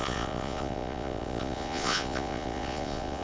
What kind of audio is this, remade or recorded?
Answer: remade